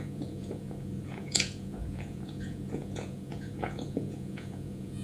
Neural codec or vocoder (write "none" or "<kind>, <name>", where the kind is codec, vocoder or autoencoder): vocoder, Vocos